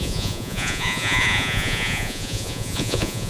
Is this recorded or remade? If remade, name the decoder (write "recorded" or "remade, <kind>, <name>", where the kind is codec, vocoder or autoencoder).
remade, vocoder, Vocos